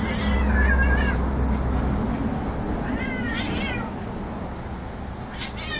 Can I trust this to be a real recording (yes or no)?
yes